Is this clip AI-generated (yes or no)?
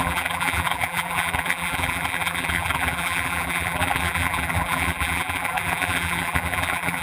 yes